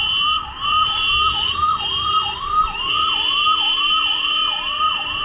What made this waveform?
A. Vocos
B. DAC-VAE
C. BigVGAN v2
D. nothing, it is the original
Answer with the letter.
C